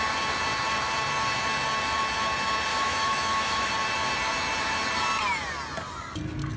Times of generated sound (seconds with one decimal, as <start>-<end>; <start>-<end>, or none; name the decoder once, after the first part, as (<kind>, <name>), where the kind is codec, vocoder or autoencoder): 2.7-3.7 (autoencoder, DAC-VAE)